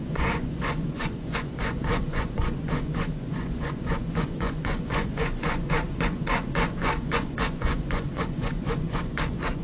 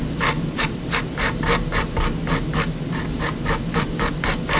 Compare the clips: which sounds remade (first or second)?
first